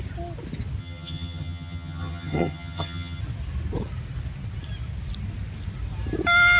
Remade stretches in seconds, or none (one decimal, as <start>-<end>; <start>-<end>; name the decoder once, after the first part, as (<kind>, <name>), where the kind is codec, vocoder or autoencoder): 0.8-3.2 (vocoder, HiFi-GAN)